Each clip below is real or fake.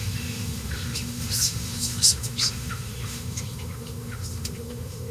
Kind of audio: fake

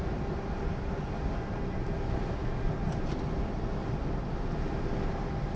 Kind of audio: real